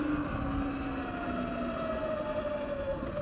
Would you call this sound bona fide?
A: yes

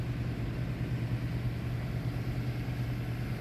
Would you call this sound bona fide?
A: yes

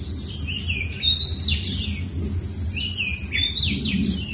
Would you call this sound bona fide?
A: yes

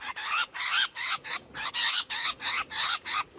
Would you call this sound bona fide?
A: no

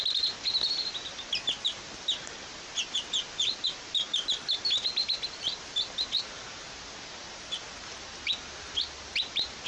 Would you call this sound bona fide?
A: yes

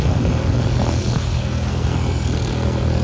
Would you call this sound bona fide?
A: no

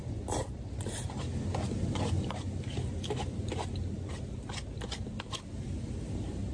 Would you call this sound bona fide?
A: yes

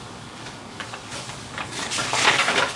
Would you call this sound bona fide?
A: no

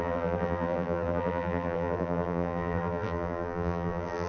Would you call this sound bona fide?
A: no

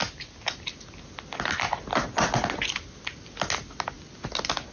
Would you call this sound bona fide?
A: yes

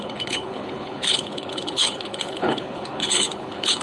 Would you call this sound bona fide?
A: no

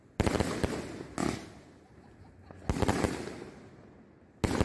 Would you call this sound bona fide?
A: yes